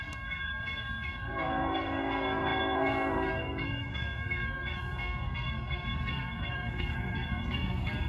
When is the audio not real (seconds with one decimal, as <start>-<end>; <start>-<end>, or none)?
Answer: 0.0-8.1